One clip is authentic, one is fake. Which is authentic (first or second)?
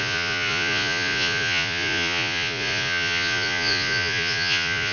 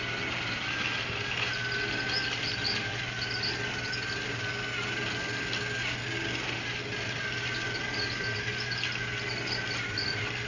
second